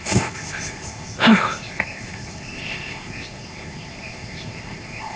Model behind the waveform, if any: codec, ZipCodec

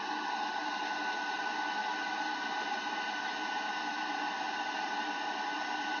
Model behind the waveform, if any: none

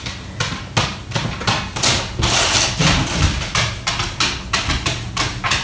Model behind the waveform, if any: none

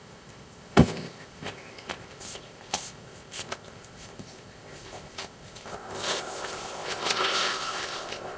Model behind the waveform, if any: codec, ZipCodec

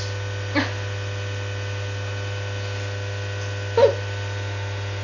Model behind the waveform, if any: none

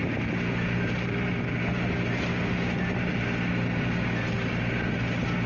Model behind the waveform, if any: none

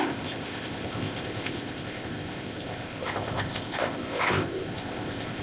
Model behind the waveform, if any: codec, ZipCodec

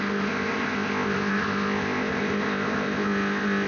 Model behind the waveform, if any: codec, ZipCodec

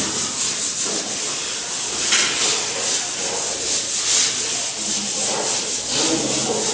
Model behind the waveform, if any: none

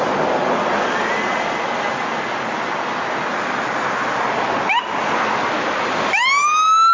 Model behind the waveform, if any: none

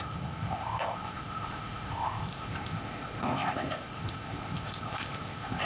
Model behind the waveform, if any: codec, ZipCodec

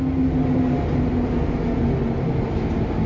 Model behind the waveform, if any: none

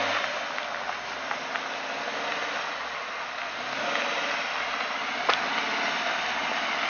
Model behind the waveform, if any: none